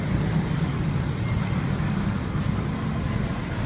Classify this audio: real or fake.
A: real